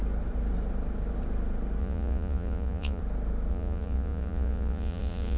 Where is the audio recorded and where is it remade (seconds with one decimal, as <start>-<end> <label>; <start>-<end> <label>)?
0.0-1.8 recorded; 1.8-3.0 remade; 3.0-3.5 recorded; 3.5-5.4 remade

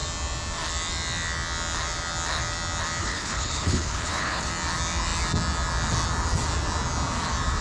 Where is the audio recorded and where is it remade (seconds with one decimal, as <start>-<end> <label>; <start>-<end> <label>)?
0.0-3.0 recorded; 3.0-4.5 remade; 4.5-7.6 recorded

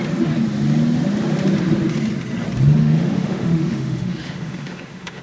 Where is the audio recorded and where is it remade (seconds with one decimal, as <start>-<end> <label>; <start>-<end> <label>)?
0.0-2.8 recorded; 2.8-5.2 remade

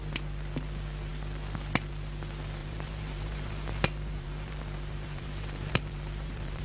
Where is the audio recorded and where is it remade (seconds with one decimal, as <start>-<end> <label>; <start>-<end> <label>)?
0.0-2.6 recorded; 2.6-6.6 remade

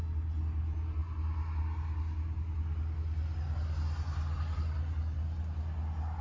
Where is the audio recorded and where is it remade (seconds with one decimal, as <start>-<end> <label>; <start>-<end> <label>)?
0.0-6.2 recorded

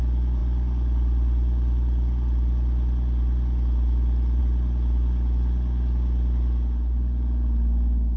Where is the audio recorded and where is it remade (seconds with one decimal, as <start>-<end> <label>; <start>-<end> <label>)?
0.0-8.2 recorded

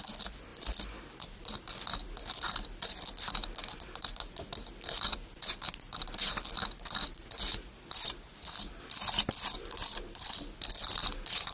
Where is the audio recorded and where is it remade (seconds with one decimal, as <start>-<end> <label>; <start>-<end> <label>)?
0.0-11.5 recorded

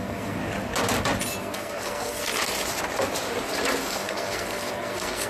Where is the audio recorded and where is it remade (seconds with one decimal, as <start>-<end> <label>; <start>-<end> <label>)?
0.0-0.4 remade; 0.4-1.4 recorded; 1.4-2.3 remade; 2.3-3.8 recorded; 3.8-5.3 remade